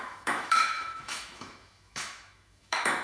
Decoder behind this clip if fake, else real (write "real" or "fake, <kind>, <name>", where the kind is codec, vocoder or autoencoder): fake, autoencoder, DAC-VAE